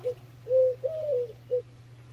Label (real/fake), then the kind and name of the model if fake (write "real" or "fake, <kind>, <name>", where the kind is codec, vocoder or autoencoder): real